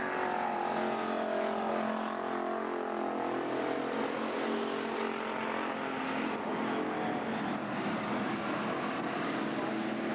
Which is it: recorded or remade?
recorded